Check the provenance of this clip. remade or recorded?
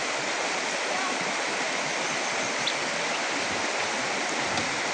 recorded